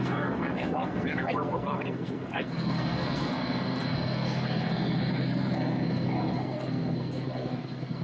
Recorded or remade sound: remade